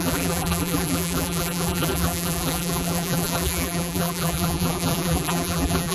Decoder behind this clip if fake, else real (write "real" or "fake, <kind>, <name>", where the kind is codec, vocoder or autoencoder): fake, vocoder, BigVGAN v2